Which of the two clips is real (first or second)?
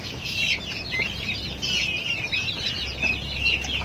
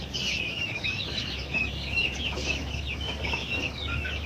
first